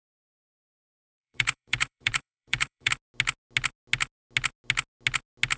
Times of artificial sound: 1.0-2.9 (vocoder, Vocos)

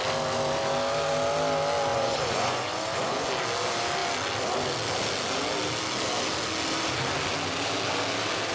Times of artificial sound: 1.9-3.3 (vocoder, Vocos)

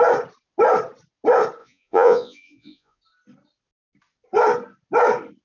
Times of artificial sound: 1.6-3.0 (vocoder, Vocos)

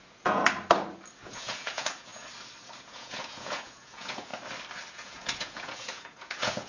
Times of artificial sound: 0.0-0.4 (vocoder, Vocos); 1.2-2.1; 2.8-4.3; 4.9-6.7

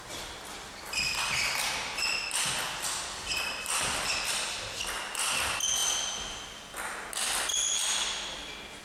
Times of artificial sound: none

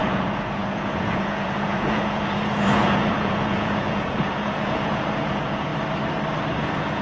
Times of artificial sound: 0.0-5.7 (vocoder, Vocos); 6.6-7.0

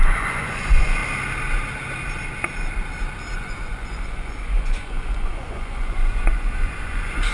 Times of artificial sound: 0.0-1.0 (vocoder, Vocos); 3.4-7.3